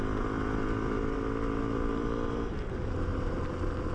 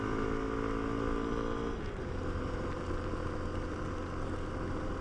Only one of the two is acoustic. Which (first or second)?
second